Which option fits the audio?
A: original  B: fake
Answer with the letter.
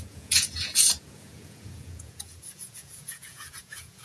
B